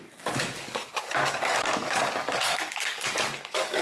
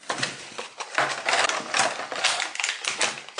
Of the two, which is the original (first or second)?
second